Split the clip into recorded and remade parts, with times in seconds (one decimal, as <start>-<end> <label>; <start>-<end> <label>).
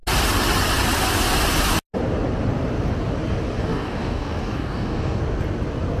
0.0-3.6 recorded; 3.6-5.2 remade; 5.2-6.0 recorded